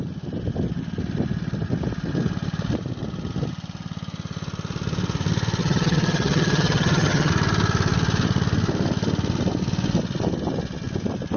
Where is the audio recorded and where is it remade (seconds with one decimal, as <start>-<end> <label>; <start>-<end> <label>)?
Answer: 0.0-5.6 recorded; 5.6-7.3 remade; 7.3-11.4 recorded